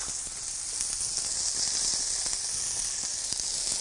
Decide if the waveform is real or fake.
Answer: real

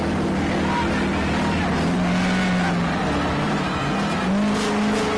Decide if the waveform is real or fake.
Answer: real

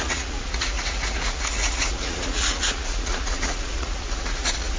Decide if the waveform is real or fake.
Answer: fake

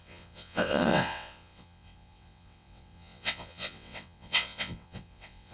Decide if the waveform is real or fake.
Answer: fake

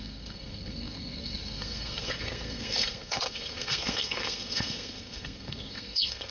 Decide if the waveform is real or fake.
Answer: fake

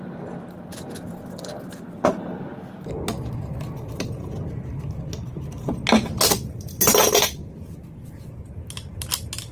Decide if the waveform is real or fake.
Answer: real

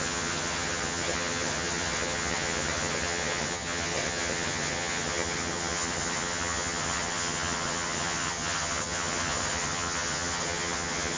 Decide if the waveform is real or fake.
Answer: fake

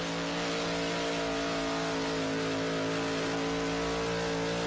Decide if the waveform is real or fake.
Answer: real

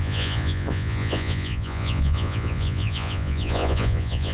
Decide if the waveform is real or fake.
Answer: fake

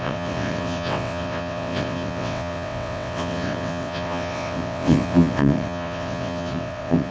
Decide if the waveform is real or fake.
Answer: fake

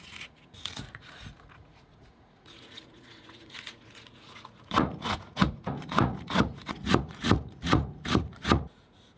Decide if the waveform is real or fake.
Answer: fake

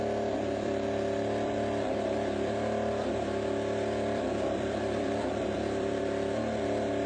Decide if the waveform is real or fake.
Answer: fake